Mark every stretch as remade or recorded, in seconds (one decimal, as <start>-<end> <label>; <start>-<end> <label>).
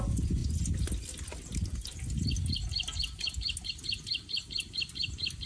0.0-5.5 recorded